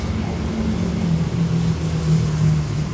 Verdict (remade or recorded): recorded